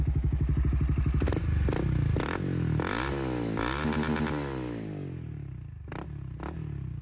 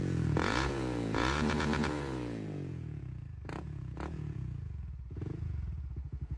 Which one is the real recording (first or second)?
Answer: first